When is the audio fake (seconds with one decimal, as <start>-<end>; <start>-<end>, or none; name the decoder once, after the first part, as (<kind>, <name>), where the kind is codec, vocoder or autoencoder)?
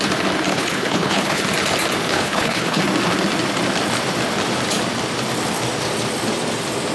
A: 0.5-1.4 (codec, HILCodec); 2.1-2.8